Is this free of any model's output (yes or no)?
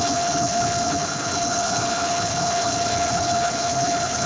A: no